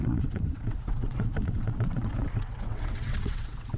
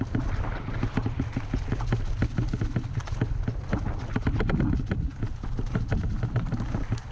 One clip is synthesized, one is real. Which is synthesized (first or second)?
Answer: first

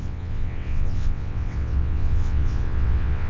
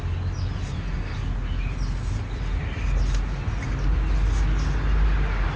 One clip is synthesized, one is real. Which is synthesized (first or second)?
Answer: first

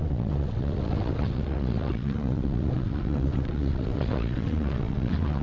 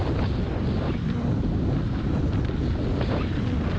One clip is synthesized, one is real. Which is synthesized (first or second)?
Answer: first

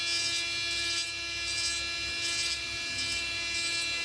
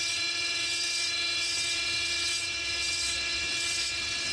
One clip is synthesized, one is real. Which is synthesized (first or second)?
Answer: second